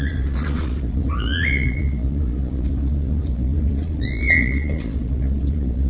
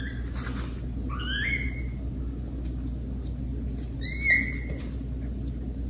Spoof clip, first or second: first